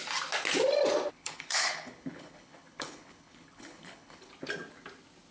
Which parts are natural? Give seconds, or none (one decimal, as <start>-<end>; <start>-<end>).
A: 0.0-1.1; 4.3-5.3